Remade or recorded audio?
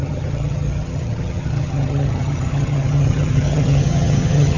remade